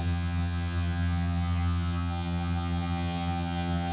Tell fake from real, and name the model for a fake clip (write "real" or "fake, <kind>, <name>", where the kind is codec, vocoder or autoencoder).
fake, vocoder, HiFi-GAN